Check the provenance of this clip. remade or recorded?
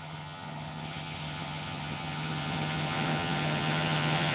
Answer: remade